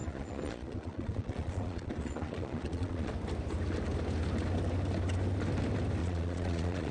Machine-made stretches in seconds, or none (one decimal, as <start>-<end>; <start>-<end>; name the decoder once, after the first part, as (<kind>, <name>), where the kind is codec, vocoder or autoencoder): 0.0-3.1 (vocoder, Vocos); 6.0-6.9